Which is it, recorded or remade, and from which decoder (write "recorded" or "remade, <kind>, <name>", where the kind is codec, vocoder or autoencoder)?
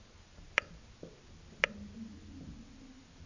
recorded